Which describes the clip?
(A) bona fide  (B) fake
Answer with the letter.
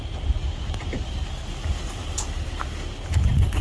A